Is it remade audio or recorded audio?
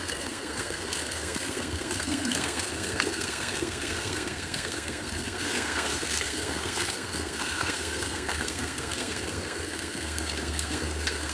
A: remade